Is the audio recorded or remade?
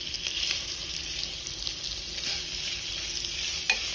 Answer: recorded